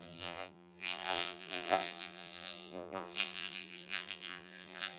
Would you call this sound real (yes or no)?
no